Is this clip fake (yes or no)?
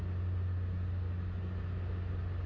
no